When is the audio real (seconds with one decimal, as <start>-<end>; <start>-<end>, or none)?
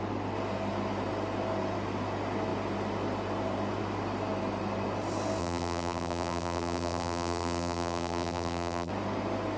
0.0-5.4; 8.9-9.6